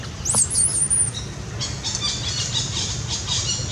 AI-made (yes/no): no